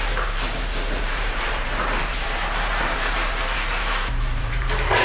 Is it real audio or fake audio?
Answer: fake